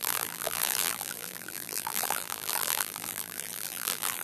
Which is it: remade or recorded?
remade